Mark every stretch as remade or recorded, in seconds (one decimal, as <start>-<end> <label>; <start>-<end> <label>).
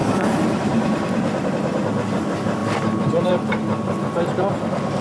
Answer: 0.0-5.0 recorded